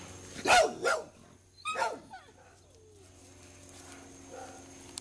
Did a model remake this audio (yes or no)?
no